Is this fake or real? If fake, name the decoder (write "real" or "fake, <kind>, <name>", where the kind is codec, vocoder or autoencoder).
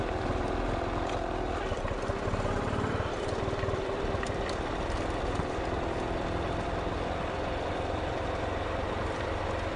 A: fake, vocoder, BigVGAN v2